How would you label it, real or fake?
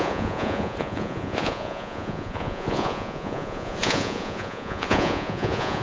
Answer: fake